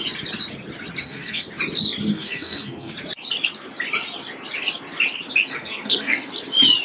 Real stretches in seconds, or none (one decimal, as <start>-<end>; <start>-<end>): 0.0-1.0; 1.5-2.1; 2.9-5.5; 6.3-6.8